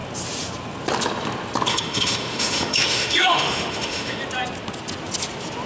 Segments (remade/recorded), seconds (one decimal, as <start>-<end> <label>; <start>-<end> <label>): 0.0-1.7 recorded; 1.7-4.2 remade; 4.2-5.7 recorded